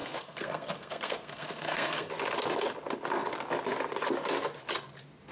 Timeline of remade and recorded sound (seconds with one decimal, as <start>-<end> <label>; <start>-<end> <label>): 0.0-2.1 remade; 2.1-5.3 recorded